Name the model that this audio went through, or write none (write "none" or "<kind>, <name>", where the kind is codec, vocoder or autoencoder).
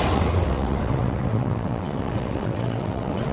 vocoder, WaveNeXt